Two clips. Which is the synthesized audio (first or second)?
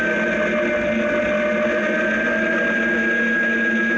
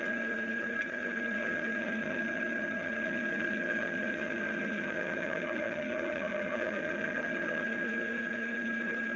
second